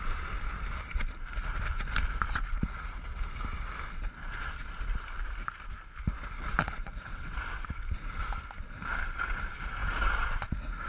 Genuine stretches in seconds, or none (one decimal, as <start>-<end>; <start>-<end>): 0.0-10.9